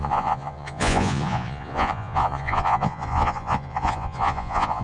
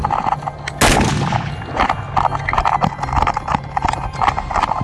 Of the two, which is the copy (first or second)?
first